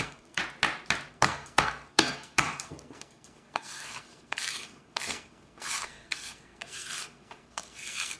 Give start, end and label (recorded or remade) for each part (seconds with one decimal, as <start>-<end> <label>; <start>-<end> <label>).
0.0-0.4 remade; 0.4-1.1 recorded; 1.1-8.2 remade